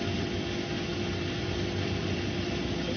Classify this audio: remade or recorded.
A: recorded